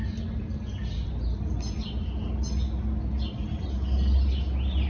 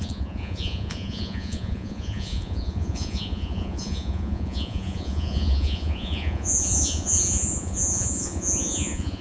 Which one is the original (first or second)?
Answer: first